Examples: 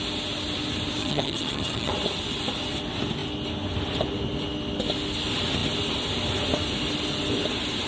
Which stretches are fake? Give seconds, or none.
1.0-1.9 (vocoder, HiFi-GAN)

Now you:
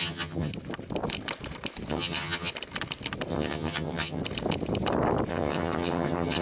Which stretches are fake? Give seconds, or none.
0.0-0.5 (vocoder, HiFi-GAN); 1.9-2.5; 3.3-4.2; 5.3-6.4

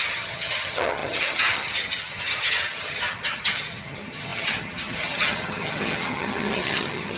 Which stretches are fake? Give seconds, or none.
0.0-7.2 (vocoder, HiFi-GAN)

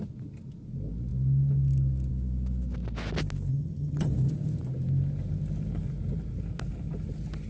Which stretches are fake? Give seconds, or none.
3.5-4.1 (vocoder, HiFi-GAN)

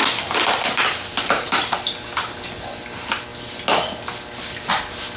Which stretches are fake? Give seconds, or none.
none

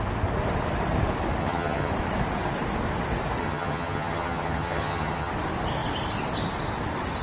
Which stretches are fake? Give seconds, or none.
1.4-1.9 (vocoder, HiFi-GAN); 3.4-5.3

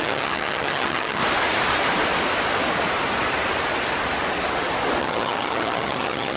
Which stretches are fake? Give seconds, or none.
0.0-1.2 (vocoder, HiFi-GAN); 5.0-6.4

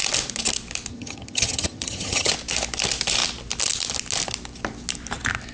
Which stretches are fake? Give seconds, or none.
0.9-2.3 (vocoder, HiFi-GAN)